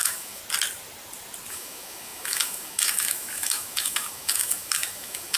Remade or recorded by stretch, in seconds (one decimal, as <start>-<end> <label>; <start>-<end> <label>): 0.0-0.4 remade; 0.4-1.5 recorded; 1.5-5.4 remade